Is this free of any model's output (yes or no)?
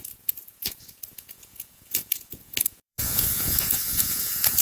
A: no